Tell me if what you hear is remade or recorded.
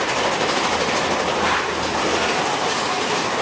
recorded